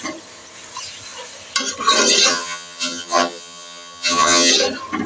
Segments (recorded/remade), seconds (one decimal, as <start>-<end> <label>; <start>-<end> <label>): 0.0-2.3 recorded; 2.3-4.5 remade; 4.5-5.1 recorded